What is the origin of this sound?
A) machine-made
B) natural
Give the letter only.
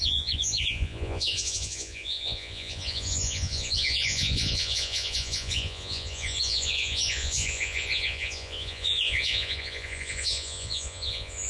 A